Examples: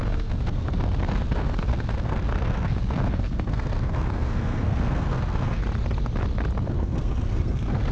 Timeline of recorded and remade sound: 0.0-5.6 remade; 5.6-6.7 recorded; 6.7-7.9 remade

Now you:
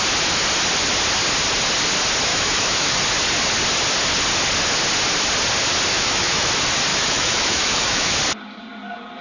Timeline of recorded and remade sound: 0.0-2.3 recorded; 2.3-3.0 remade; 3.0-5.9 recorded; 5.9-6.5 remade; 6.5-6.9 recorded; 6.9-8.2 remade; 8.2-9.2 recorded